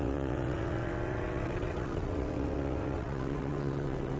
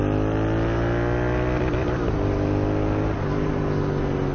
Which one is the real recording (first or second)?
second